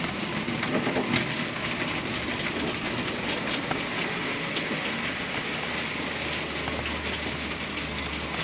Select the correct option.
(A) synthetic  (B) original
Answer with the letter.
B